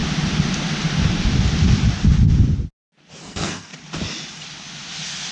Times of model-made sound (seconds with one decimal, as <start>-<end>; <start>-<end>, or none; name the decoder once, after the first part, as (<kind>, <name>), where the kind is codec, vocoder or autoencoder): 3.2-3.7 (codec, SNAC)